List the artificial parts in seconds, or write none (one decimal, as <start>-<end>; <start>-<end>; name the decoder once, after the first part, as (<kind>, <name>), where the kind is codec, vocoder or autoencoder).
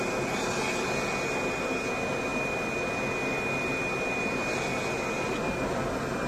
none